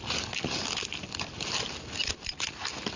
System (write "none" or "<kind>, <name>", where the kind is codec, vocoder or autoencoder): none